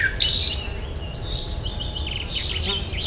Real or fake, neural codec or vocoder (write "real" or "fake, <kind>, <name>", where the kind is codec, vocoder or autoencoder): real